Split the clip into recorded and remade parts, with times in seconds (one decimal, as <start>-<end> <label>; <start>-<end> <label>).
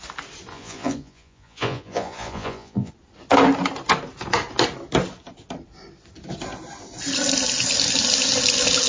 0.0-0.5 recorded; 0.5-2.9 remade; 2.9-8.9 recorded